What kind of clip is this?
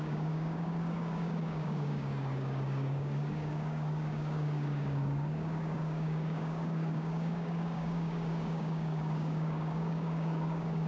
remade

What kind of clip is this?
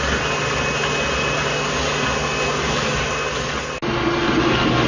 recorded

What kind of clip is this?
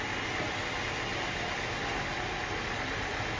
recorded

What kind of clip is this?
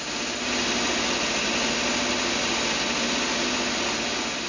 recorded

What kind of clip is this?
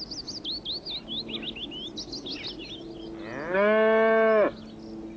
recorded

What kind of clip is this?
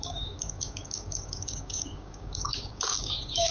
remade